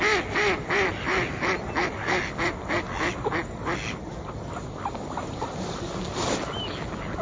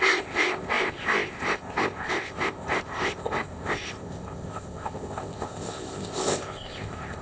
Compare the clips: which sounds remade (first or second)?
second